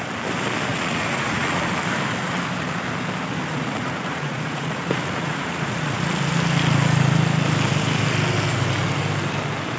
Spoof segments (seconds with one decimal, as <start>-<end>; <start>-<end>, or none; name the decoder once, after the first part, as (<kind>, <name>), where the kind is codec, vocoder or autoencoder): 0.7-1.7 (vocoder, Vocos); 3.5-6.0

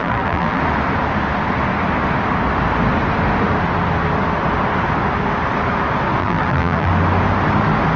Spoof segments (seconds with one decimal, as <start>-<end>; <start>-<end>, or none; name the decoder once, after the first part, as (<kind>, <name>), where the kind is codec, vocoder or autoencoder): 0.0-0.6 (vocoder, BigVGAN v2); 6.2-6.9

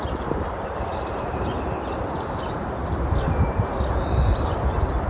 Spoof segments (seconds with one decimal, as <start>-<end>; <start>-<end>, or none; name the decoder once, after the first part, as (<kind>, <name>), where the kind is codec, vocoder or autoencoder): 0.0-1.5 (vocoder, BigVGAN v2); 2.2-2.8; 4.0-5.1

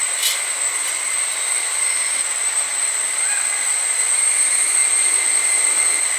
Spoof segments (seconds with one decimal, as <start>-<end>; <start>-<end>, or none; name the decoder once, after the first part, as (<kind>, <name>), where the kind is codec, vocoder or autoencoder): none

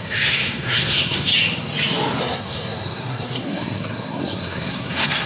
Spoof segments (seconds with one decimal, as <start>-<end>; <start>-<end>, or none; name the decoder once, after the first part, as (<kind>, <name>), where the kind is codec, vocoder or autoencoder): 0.0-1.3 (codec, SNAC); 2.2-5.3

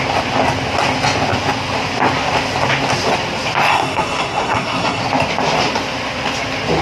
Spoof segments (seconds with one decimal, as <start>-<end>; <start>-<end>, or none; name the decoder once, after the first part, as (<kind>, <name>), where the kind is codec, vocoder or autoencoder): 3.7-5.0 (codec, SNAC)

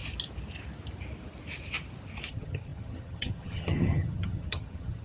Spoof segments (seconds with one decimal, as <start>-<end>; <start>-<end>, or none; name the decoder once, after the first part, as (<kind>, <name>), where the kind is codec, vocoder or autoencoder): 2.3-5.0 (vocoder, HiFi-GAN)